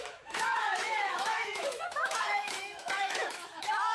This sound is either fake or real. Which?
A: fake